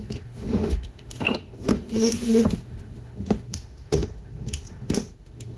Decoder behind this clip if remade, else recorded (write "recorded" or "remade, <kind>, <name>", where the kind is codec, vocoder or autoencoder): remade, autoencoder, DAC-VAE